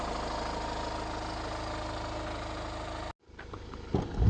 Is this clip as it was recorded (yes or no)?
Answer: yes